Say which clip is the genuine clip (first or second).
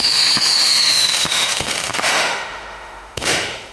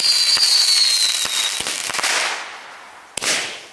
second